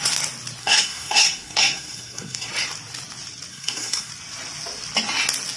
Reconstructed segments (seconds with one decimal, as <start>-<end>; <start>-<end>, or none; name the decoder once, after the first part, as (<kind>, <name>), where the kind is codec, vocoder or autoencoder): 0.6-2.5 (codec, SNAC); 3.5-4.1